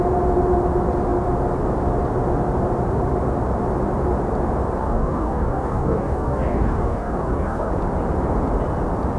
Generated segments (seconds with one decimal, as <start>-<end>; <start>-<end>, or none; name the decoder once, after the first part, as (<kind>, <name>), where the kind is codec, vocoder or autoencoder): 4.8-7.7 (codec, DAC)